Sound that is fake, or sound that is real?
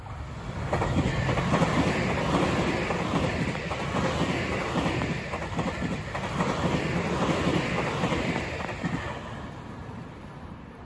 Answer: fake